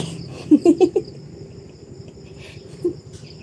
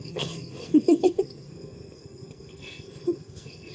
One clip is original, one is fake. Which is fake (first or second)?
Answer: second